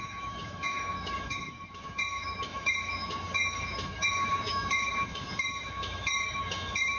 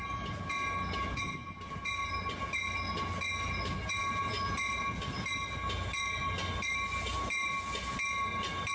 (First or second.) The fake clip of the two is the first